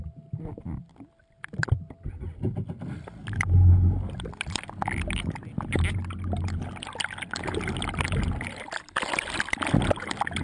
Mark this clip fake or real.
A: real